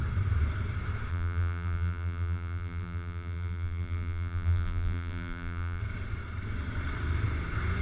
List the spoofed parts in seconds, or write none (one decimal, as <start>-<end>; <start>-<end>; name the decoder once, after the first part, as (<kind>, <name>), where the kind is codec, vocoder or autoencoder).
1.1-5.8 (vocoder, BigVGAN v2)